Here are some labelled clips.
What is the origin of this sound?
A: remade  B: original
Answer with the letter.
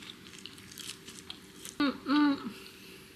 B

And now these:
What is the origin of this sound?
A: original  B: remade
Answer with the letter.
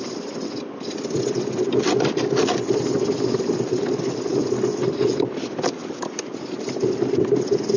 A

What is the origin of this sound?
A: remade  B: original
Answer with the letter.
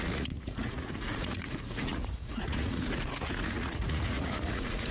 A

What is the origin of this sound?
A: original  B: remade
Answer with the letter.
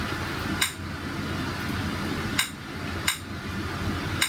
A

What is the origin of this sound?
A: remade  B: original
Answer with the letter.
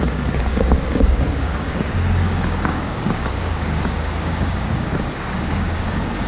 A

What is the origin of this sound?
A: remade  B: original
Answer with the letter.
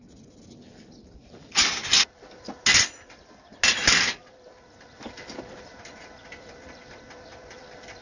B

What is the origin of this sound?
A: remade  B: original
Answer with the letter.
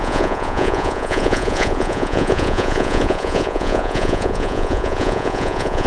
A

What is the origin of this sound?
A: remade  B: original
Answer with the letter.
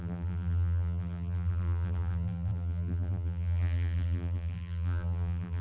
A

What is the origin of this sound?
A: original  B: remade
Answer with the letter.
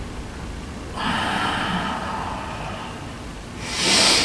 A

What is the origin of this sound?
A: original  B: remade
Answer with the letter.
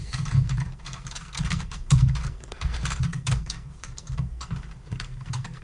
B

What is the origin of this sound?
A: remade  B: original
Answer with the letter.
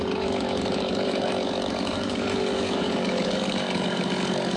A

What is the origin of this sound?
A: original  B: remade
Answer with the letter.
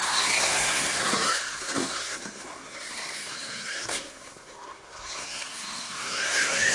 B